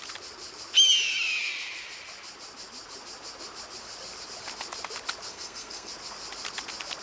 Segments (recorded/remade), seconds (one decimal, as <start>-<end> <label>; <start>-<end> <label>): 0.0-5.3 recorded; 5.3-5.9 remade; 5.9-7.0 recorded